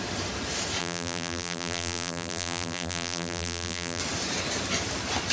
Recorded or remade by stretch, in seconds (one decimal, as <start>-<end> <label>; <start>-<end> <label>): 0.0-0.8 recorded; 0.8-4.0 remade; 4.0-5.3 recorded